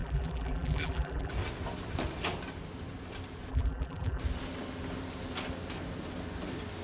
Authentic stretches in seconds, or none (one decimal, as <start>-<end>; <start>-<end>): 1.3-3.5; 4.2-6.8